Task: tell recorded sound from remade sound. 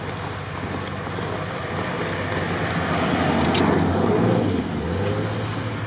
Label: recorded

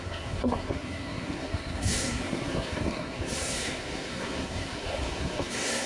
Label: remade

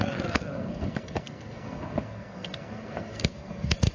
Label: remade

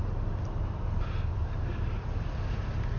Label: recorded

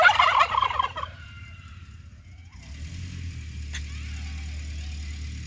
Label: recorded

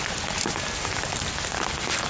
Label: recorded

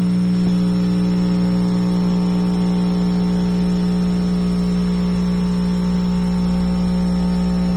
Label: recorded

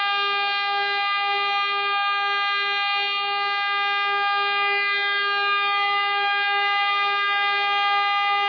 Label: recorded